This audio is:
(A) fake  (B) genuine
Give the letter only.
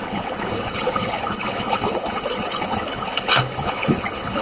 A